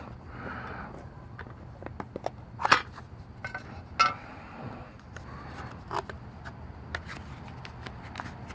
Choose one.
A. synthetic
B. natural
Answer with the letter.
B